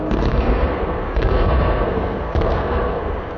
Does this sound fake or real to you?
fake